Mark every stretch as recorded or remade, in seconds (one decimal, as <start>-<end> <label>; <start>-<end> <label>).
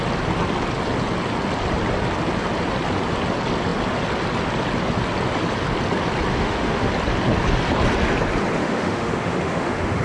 0.0-6.3 recorded; 6.3-6.9 remade; 6.9-8.6 recorded; 8.6-10.0 remade